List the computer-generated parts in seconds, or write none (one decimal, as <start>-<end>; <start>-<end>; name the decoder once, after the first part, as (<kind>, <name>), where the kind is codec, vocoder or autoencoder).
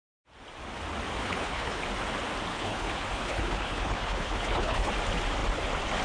1.2-1.8 (codec, HILCodec); 2.5-4.9